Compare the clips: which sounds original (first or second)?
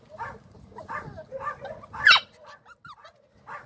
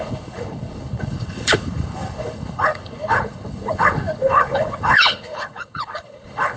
first